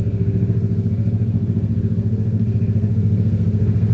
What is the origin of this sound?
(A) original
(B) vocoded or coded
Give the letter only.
B